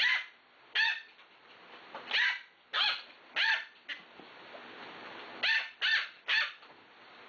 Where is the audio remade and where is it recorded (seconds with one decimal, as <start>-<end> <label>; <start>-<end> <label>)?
0.0-7.3 recorded